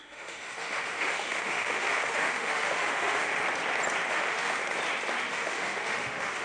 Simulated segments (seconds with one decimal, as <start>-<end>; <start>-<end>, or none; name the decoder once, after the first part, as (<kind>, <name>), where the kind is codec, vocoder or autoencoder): 0.0-3.3 (autoencoder, DAC-VAE); 4.1-4.6; 5.3-6.4